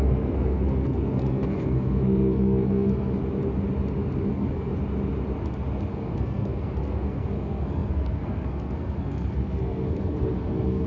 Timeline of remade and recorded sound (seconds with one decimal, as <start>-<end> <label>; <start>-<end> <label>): 0.0-3.2 remade; 3.2-4.3 recorded; 4.3-4.7 remade; 4.7-5.8 recorded; 5.8-10.9 remade